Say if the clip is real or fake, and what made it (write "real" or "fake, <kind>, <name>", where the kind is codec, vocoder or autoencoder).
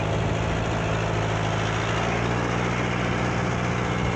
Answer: real